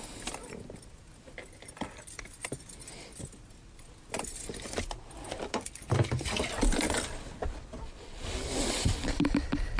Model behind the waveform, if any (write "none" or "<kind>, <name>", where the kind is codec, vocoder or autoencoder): none